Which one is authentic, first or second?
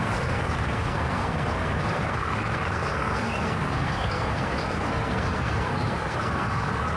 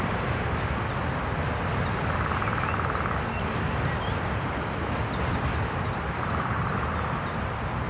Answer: second